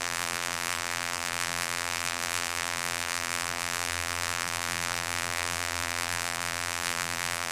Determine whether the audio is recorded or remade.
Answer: remade